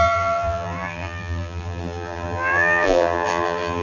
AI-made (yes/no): yes